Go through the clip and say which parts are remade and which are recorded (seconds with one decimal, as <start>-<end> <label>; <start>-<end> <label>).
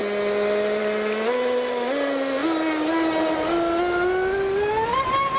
0.0-5.4 recorded